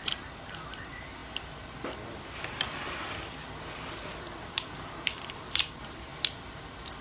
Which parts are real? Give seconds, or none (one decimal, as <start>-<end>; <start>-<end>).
1.2-4.4; 6.1-7.0